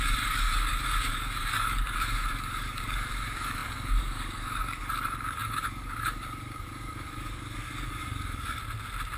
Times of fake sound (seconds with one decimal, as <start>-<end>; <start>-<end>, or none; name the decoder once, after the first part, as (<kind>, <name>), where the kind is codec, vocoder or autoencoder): 0.0-8.6 (codec, DAC)